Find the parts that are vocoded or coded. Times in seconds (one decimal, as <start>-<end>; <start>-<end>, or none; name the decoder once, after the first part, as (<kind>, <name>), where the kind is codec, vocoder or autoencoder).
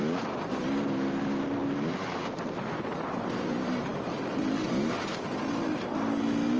none